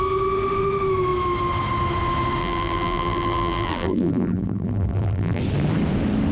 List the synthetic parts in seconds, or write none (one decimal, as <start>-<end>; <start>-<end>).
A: 2.4-5.4